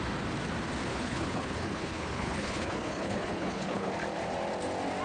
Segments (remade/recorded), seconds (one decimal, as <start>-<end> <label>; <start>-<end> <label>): 0.0-0.9 recorded; 0.9-3.9 remade; 3.9-5.0 recorded